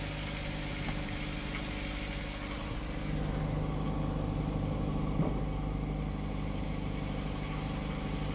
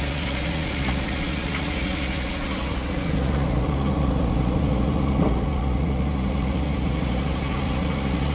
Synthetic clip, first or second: second